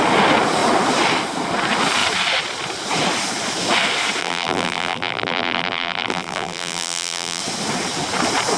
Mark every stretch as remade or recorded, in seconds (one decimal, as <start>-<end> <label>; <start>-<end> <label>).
0.0-4.2 recorded; 4.2-7.4 remade; 7.4-8.6 recorded